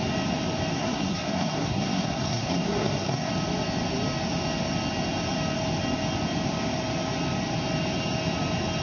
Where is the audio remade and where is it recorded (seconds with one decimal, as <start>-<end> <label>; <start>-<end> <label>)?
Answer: 0.0-0.7 recorded; 0.7-3.3 remade; 3.3-8.8 recorded